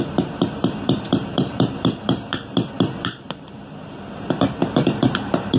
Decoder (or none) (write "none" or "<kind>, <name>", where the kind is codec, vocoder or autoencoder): vocoder, BigVGAN v2